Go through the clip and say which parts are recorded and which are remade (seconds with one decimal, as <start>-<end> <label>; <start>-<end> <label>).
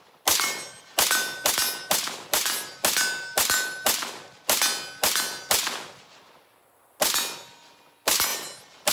0.0-8.9 recorded